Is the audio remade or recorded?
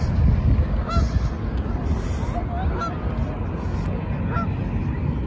recorded